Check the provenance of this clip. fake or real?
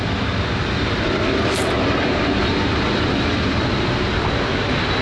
real